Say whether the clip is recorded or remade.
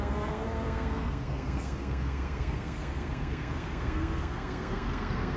remade